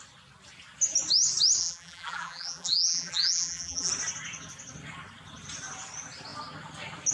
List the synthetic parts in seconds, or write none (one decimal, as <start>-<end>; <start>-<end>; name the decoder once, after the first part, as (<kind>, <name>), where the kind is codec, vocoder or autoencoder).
1.6-3.9 (vocoder, BigVGAN v2)